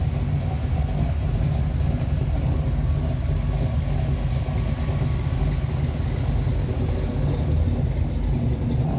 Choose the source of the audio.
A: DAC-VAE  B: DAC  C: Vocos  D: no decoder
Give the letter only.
D